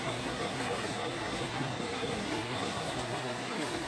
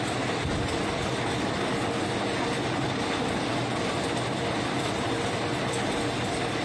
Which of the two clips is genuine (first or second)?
second